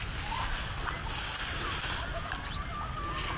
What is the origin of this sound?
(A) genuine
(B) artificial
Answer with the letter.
A